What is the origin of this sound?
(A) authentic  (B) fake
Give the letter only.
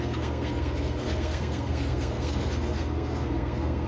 B